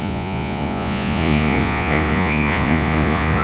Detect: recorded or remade remade